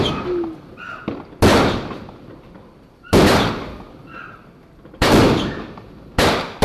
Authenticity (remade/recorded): recorded